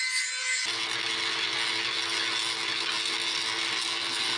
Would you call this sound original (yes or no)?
yes